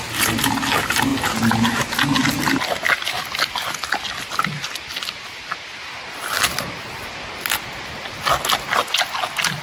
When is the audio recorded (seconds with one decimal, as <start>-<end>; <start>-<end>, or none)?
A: 0.0-9.6

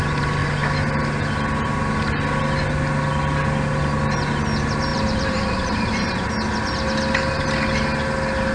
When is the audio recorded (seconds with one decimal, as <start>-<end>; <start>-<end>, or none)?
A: 0.0-4.9; 6.3-8.5

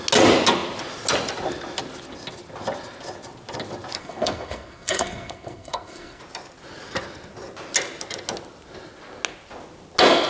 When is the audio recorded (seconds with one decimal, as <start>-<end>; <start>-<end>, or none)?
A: 0.0-4.0; 6.2-10.3